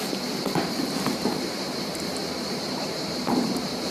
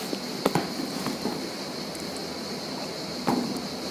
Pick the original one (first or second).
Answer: second